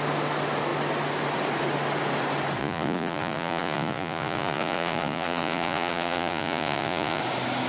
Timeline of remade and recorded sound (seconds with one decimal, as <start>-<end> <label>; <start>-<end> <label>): 0.0-2.6 recorded; 2.6-7.2 remade; 7.2-7.7 recorded